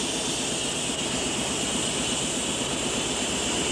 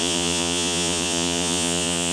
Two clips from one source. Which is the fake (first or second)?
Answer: second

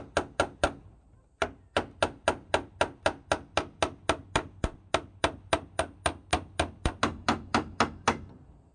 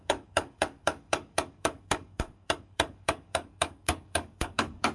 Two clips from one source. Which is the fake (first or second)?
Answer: second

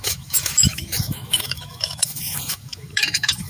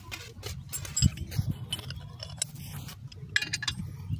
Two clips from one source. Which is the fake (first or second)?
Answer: first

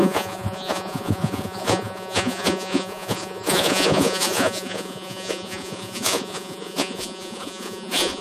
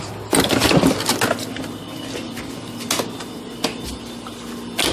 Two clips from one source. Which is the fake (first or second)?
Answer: first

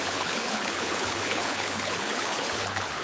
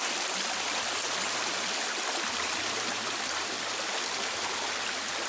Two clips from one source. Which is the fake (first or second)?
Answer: first